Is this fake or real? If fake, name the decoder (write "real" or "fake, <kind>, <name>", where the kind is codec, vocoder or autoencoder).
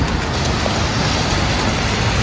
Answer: real